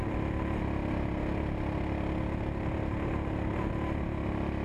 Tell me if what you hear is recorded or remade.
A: recorded